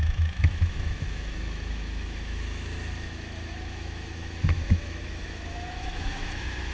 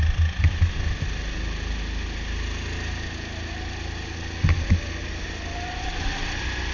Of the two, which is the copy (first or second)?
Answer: first